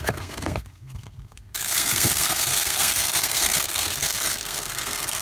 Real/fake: fake